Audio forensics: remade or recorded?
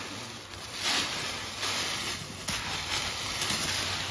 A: recorded